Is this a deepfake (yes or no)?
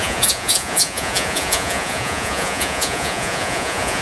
yes